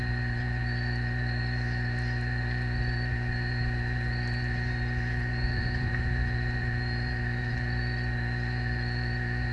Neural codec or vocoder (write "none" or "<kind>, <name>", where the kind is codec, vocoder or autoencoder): vocoder, BigVGAN v2